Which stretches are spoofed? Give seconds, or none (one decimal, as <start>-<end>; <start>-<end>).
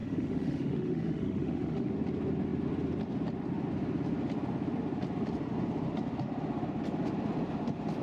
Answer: 0.0-1.9